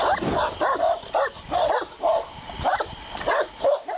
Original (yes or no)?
yes